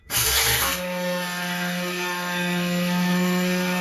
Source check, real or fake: fake